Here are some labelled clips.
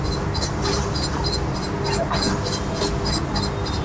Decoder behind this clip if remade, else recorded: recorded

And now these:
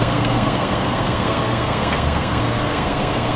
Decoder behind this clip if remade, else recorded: remade, codec, SNAC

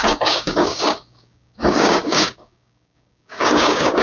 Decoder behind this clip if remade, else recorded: remade, codec, DAC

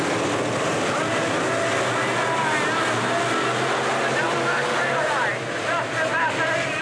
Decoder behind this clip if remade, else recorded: recorded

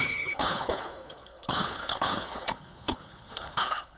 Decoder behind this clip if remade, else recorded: remade, codec, HILCodec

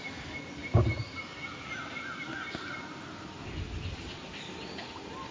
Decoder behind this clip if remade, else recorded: recorded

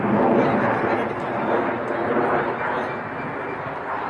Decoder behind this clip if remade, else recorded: recorded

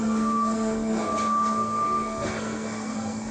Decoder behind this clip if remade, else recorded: remade, codec, SNAC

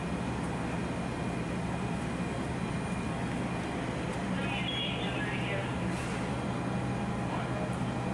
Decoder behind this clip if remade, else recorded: recorded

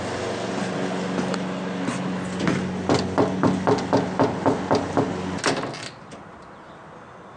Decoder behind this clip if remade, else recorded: recorded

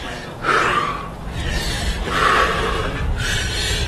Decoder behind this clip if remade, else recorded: recorded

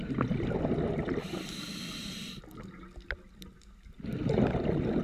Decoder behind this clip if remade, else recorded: recorded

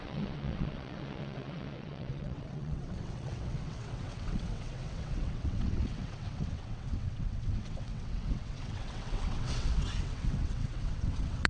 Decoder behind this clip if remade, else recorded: remade, vocoder, WaveNeXt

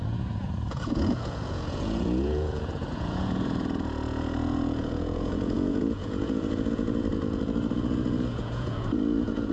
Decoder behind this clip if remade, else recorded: remade, vocoder, Vocos